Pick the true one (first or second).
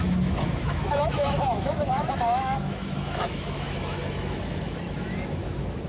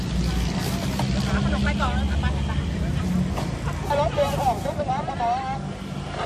second